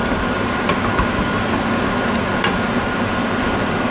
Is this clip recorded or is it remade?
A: remade